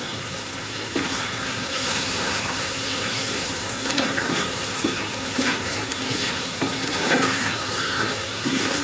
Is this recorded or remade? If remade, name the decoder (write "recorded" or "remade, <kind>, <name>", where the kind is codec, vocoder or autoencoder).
remade, codec, SNAC